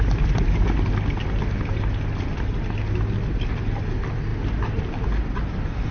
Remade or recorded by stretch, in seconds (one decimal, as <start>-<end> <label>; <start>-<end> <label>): 0.0-5.9 recorded